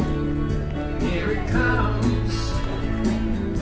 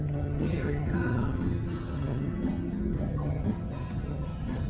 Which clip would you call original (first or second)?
first